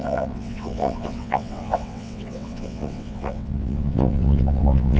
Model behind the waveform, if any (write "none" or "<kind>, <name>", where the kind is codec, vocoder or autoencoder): vocoder, WaveNeXt